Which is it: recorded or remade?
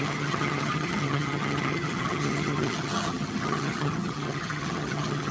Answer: remade